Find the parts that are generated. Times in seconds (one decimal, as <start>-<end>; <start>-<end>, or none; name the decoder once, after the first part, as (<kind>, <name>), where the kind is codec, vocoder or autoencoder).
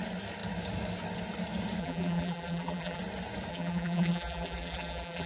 1.8-3.0 (vocoder, BigVGAN v2); 3.5-5.3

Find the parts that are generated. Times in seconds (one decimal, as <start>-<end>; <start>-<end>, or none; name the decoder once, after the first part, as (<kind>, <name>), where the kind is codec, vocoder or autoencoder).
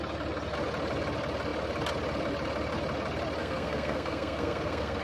3.4-5.0 (codec, SNAC)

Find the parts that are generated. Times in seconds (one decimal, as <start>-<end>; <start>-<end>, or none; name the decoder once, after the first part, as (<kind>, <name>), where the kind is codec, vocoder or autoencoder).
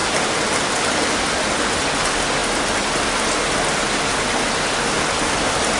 none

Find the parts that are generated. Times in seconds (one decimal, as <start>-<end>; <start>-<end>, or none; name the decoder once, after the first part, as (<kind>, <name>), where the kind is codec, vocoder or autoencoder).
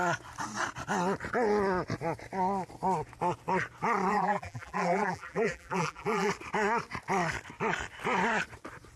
4.1-6.3 (vocoder, BigVGAN v2)